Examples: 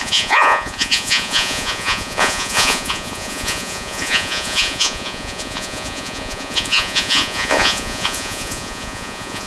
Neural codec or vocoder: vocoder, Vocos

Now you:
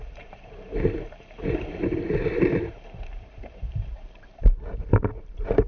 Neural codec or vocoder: vocoder, BigVGAN v2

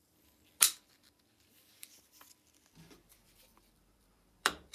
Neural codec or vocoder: vocoder, BigVGAN v2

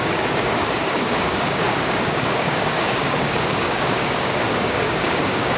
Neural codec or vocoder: codec, DAC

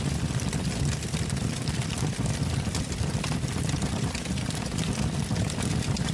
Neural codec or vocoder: vocoder, BigVGAN v2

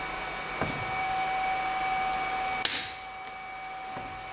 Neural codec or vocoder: none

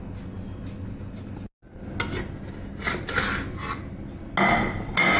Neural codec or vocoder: none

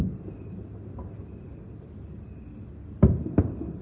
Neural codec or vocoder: none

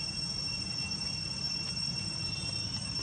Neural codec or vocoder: none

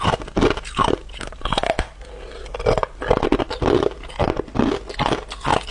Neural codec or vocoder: none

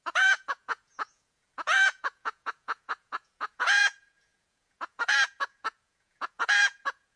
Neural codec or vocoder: vocoder, Vocos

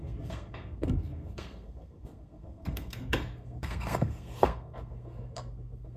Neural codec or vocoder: codec, SNAC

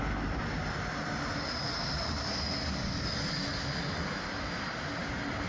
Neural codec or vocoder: none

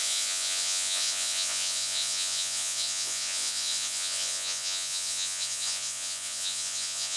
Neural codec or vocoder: vocoder, Vocos